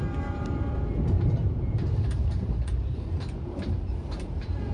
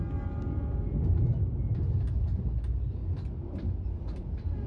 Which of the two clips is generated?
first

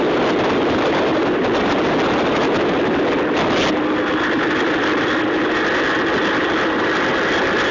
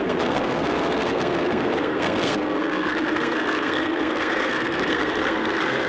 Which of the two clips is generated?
second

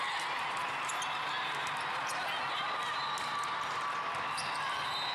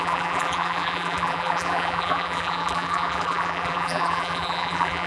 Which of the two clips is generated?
second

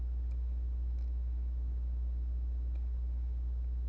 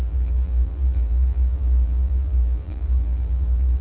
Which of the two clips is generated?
second